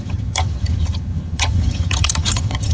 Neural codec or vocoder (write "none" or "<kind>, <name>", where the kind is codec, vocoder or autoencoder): vocoder, HiFi-GAN